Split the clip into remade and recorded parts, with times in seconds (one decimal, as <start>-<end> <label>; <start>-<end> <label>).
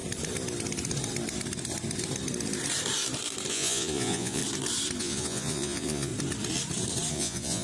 0.0-3.5 recorded; 3.5-4.4 remade; 4.4-5.0 recorded; 5.0-6.1 remade; 6.1-7.1 recorded; 7.1-7.6 remade